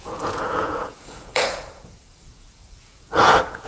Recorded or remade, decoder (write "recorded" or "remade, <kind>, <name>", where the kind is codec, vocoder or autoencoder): remade, vocoder, Vocos